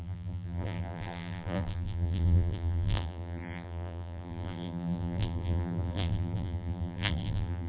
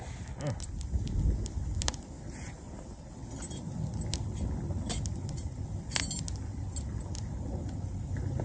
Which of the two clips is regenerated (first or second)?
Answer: first